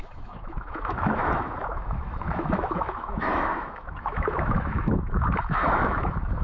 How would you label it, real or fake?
fake